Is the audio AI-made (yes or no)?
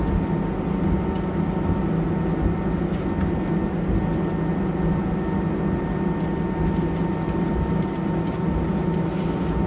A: no